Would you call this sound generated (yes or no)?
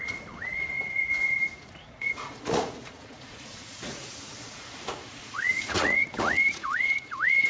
yes